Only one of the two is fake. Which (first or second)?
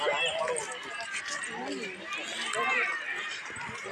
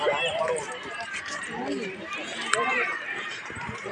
second